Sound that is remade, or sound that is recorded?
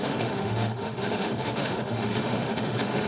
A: remade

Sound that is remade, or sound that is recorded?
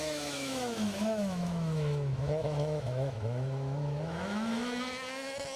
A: remade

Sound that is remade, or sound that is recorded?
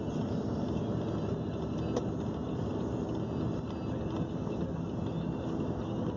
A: recorded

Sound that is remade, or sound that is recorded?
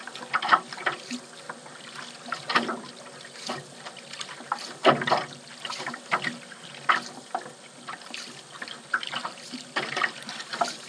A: recorded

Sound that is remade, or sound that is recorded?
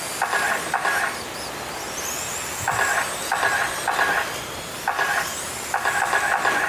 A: recorded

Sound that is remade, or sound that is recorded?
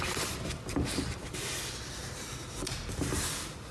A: recorded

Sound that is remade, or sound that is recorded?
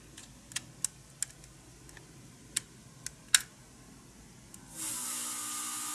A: recorded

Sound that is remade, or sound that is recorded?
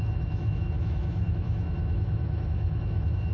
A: remade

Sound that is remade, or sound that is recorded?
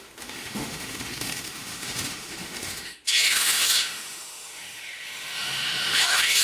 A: remade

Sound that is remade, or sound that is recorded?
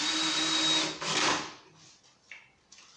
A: recorded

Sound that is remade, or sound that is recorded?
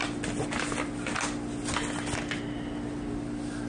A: recorded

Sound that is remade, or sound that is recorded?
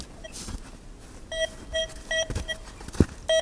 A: recorded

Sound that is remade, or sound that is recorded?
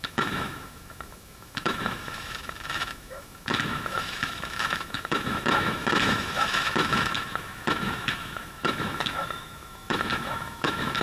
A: remade